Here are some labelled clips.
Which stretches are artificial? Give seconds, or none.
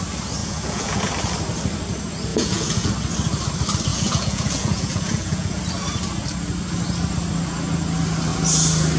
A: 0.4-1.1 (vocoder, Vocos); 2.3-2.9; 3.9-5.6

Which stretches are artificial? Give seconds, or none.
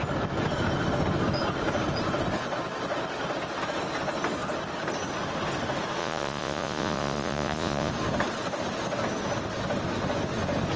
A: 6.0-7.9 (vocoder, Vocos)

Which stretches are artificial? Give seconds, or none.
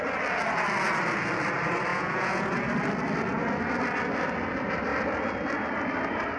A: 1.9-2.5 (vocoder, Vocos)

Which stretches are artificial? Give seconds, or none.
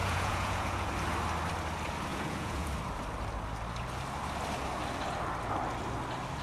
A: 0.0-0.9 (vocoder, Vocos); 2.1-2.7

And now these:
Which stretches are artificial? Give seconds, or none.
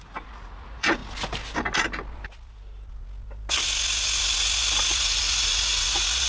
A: 0.0-1.0 (vocoder, Vocos); 4.8-6.3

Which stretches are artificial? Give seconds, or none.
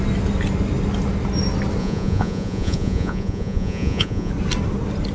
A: 1.8-4.3 (vocoder, Vocos)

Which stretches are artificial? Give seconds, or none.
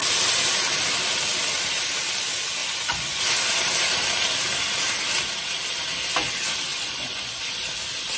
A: 2.6-3.2 (vocoder, Vocos); 6.7-7.4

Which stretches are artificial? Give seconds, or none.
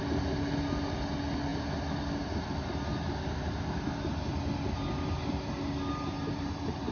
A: none